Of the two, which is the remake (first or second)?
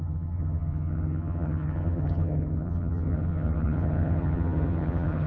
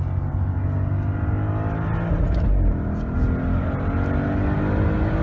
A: first